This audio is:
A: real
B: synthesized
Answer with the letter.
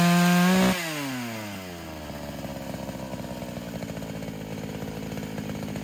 A